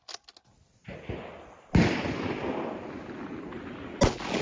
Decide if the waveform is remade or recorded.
recorded